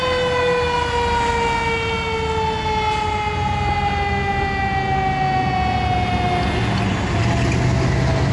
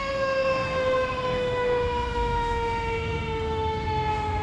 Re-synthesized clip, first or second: second